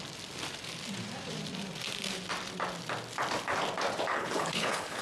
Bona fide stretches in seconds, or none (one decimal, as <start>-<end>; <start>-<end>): 0.0-4.1